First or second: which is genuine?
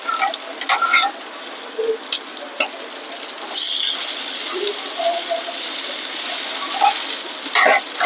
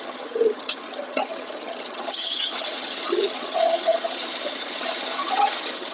first